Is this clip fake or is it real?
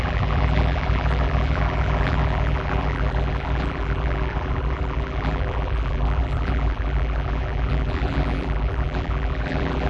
fake